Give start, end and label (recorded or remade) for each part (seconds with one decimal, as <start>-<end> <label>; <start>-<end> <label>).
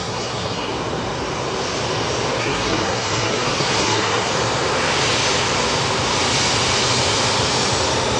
0.0-0.7 remade; 0.7-2.4 recorded; 2.4-4.3 remade; 4.3-8.2 recorded